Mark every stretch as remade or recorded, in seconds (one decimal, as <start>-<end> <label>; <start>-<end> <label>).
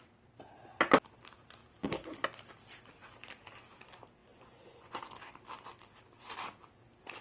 0.0-4.2 recorded; 4.2-5.1 remade; 5.1-7.2 recorded